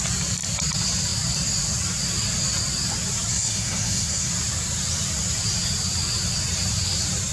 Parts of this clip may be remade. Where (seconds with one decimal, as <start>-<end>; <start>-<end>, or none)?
3.3-4.3